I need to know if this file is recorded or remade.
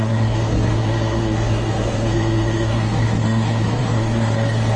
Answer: remade